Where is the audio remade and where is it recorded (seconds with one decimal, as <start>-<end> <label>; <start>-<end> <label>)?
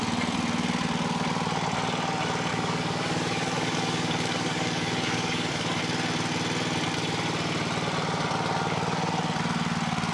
0.0-2.5 recorded; 2.5-5.8 remade; 5.8-10.1 recorded